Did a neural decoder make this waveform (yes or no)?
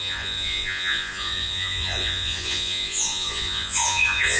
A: yes